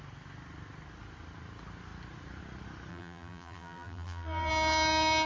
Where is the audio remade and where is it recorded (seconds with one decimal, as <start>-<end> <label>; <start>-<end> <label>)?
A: 0.0-2.9 recorded; 2.9-4.5 remade; 4.5-5.3 recorded